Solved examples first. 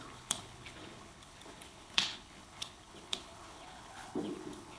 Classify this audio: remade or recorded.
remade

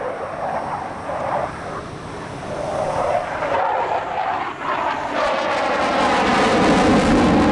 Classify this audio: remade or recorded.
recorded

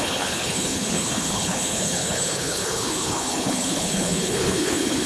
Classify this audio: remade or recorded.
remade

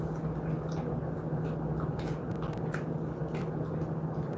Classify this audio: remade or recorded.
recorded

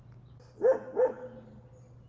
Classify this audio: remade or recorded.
recorded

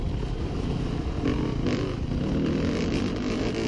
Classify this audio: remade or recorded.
recorded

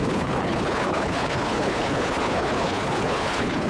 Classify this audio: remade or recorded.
remade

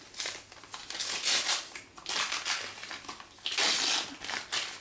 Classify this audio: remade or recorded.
recorded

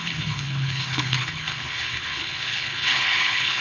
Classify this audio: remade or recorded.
remade